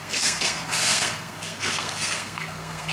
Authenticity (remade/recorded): remade